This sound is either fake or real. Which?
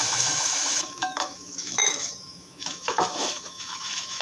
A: fake